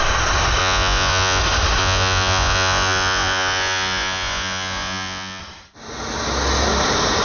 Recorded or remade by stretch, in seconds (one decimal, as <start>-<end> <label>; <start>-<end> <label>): 0.0-0.6 recorded; 0.6-1.4 remade; 1.4-1.8 recorded; 1.8-5.4 remade; 5.4-7.2 recorded